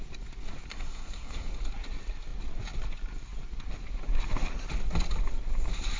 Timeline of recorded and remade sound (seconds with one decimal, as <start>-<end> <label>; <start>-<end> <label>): 0.0-0.7 recorded; 0.7-1.5 remade; 1.5-6.0 recorded